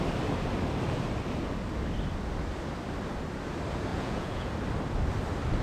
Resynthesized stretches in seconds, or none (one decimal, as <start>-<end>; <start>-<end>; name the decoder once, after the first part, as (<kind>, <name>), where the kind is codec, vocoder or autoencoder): 3.9-4.5 (vocoder, Vocos)